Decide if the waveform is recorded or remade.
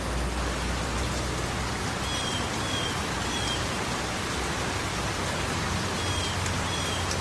recorded